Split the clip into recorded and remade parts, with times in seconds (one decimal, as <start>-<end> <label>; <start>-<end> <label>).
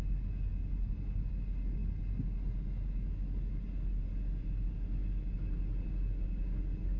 0.0-7.0 recorded